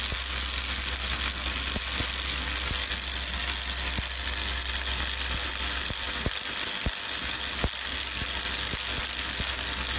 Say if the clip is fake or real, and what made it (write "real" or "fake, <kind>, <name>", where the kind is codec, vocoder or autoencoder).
real